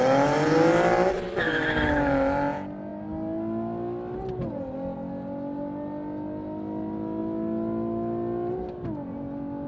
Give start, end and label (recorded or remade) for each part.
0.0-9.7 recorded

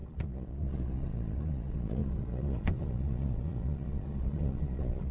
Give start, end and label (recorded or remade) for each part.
0.0-5.1 remade

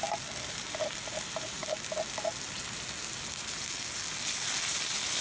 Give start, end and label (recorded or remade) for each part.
0.0-5.2 recorded

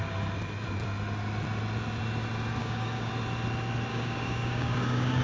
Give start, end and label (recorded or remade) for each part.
0.0-2.6 recorded; 2.6-3.1 remade; 3.1-3.9 recorded; 3.9-5.2 remade